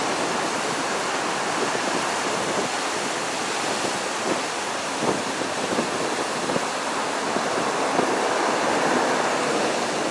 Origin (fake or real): real